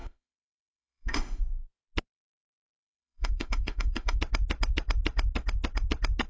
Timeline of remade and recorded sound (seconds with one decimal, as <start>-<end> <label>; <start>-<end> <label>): 0.0-1.4 remade; 1.4-2.8 recorded; 2.8-4.2 remade; 4.2-6.3 recorded